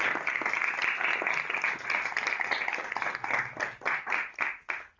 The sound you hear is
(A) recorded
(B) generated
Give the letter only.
A